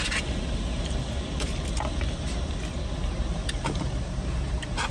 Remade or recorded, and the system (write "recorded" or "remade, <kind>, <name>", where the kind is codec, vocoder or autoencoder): recorded